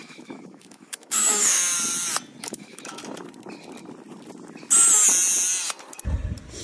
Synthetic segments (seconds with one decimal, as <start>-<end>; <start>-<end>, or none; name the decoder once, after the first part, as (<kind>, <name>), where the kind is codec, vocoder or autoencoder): 0.0-1.6 (autoencoder, DAC-VAE); 2.4-3.0